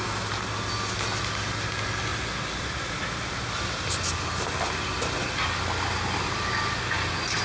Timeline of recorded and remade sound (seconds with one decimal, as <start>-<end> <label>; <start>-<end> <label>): 0.0-2.1 recorded; 2.1-5.2 remade; 5.2-7.4 recorded